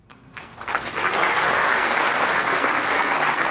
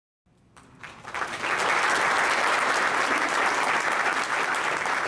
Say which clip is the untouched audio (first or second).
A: second